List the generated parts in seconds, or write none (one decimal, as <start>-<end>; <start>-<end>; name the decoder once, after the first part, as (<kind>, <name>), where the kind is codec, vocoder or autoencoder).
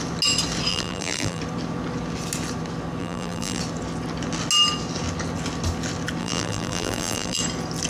0.7-1.4 (vocoder, BigVGAN v2); 3.0-3.6; 6.2-7.4